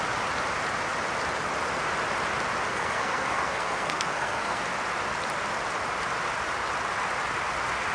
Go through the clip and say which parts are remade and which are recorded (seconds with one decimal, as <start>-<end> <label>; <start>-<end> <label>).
0.0-2.7 recorded; 2.7-4.6 remade; 4.6-7.9 recorded